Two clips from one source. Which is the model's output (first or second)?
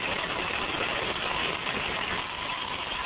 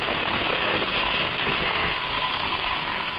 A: second